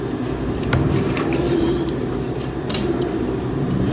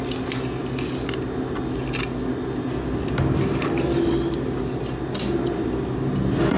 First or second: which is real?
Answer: second